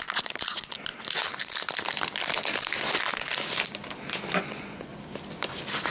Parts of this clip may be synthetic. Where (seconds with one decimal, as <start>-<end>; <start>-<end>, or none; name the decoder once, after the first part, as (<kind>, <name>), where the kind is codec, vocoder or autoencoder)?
0.0-0.9 (vocoder, Vocos); 4.4-4.9